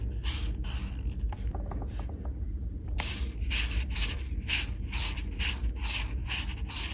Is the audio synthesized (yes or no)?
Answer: no